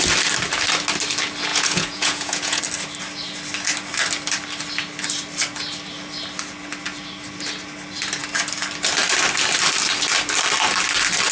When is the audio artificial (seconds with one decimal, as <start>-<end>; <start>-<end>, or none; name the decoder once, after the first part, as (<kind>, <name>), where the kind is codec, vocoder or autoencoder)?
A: 1.5-2.6 (vocoder, Vocos)